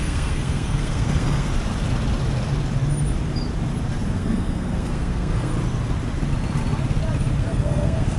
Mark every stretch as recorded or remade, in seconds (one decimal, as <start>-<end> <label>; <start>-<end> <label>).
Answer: 0.0-1.5 remade; 1.5-4.1 recorded; 4.1-5.5 remade; 5.5-7.4 recorded; 7.4-8.2 remade